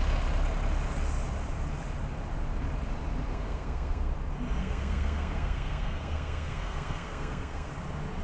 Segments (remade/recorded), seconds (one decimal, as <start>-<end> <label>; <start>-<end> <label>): 0.0-3.3 recorded; 3.3-4.1 remade; 4.1-4.6 recorded; 4.6-7.7 remade; 7.7-8.2 recorded